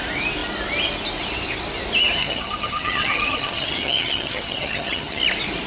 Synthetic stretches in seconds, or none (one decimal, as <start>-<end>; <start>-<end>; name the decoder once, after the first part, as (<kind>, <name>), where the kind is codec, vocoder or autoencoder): 2.2-5.2 (vocoder, HiFi-GAN)